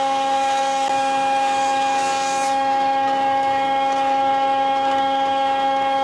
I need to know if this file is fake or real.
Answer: fake